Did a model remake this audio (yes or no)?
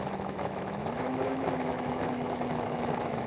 yes